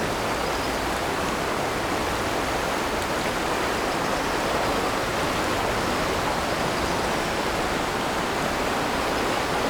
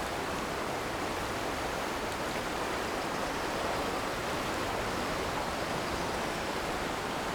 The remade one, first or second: second